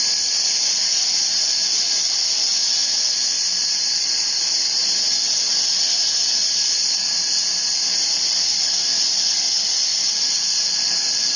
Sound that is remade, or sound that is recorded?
remade